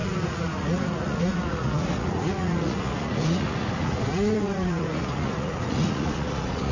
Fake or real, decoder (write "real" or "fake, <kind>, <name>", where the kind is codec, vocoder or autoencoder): fake, vocoder, Vocos